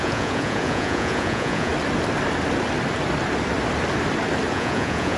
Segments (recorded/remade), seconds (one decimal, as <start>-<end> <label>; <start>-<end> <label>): 0.0-1.7 remade; 1.7-4.5 recorded; 4.5-5.2 remade